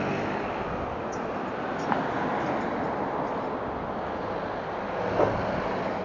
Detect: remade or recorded recorded